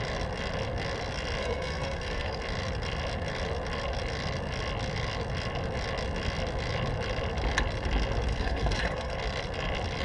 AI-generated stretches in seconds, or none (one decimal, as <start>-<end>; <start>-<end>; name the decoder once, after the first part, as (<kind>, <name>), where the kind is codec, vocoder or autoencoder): 1.4-2.4 (codec, SNAC); 8.3-9.2